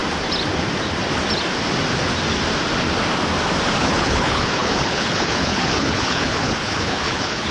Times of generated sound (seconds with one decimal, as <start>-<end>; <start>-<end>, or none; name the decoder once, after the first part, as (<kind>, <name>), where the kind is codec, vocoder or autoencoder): 3.8-7.5 (codec, HILCodec)